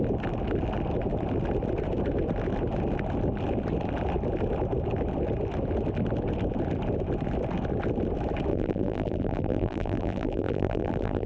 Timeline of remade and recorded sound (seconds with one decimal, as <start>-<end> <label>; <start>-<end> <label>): 0.0-8.5 recorded; 8.5-11.3 remade